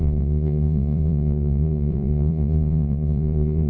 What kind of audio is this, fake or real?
fake